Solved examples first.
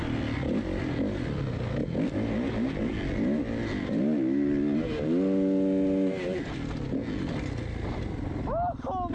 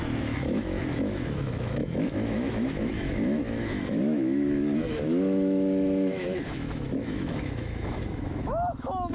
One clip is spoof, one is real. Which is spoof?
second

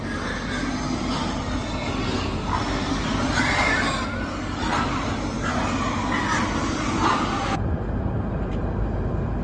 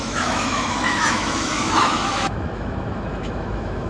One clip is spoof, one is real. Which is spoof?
second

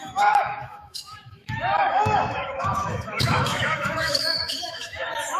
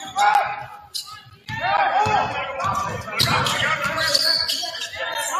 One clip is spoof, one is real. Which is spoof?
first